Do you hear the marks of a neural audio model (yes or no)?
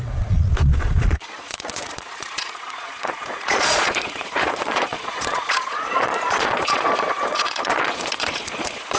yes